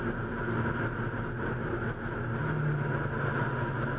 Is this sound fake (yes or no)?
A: no